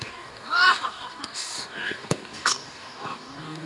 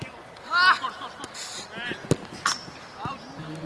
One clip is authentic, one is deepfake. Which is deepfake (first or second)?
first